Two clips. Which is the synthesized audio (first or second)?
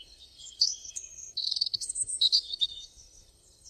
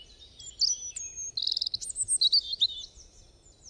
first